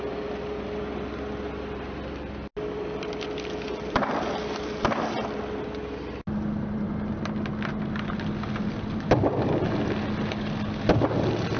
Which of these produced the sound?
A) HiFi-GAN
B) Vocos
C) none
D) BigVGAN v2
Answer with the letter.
C